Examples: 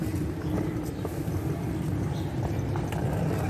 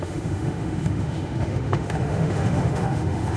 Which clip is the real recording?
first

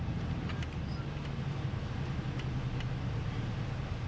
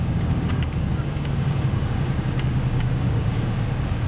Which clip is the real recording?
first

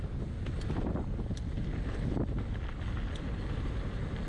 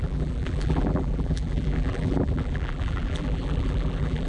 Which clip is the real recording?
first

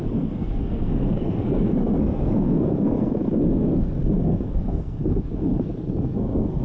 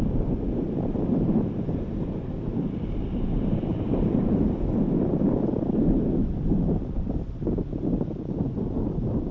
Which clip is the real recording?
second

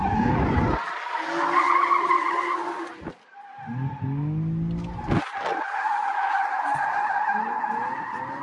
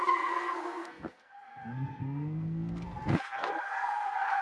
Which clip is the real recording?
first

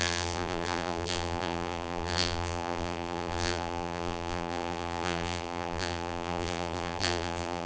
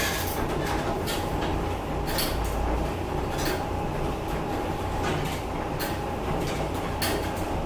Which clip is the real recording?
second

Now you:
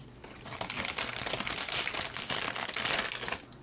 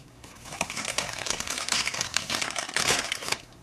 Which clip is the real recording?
first